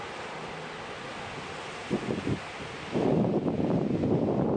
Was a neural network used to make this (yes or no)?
no